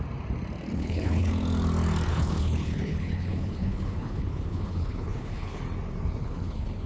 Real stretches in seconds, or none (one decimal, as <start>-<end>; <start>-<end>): 0.0-0.7; 1.3-2.1; 5.6-6.2

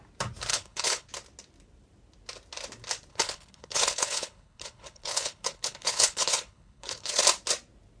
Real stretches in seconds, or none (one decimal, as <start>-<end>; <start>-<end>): 0.0-0.5; 1.1-3.1; 7.2-8.0